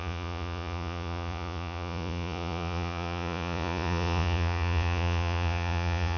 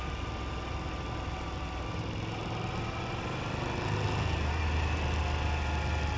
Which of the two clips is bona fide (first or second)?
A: second